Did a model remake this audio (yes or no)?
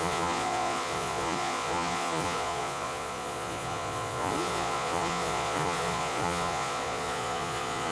yes